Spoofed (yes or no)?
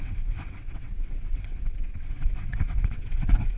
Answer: yes